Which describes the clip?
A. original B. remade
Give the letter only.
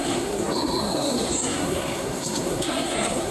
B